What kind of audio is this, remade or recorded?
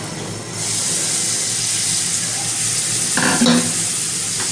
recorded